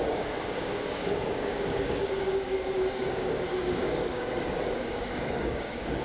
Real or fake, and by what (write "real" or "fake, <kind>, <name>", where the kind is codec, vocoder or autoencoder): fake, codec, DAC